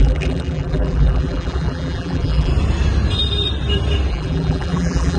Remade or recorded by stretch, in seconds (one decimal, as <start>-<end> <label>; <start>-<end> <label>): 0.0-2.5 remade; 2.5-4.1 recorded; 4.1-5.2 remade